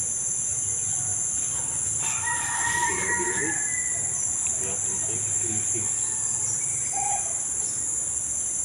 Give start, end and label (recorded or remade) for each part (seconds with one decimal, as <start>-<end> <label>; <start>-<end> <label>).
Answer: 0.0-8.6 recorded